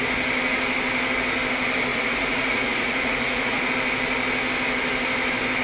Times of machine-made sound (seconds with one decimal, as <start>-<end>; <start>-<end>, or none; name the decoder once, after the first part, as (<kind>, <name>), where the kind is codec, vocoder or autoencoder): 1.9-3.7 (vocoder, Vocos)